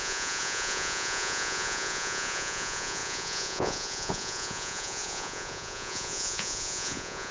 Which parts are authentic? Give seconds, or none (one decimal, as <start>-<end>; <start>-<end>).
none